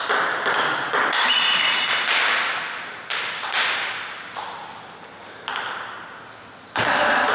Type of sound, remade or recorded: recorded